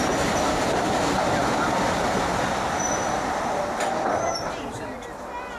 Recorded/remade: recorded